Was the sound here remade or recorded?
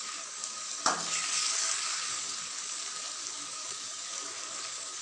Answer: remade